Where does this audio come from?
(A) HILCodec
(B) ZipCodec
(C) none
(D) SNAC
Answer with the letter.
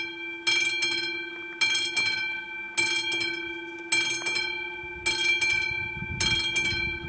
C